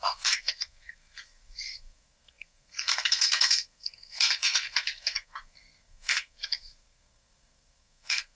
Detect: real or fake fake